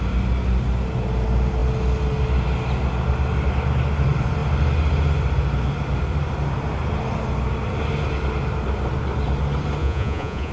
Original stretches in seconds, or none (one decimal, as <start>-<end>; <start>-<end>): 0.0-9.8